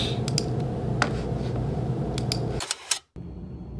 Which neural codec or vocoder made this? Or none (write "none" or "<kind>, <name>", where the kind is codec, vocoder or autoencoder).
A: none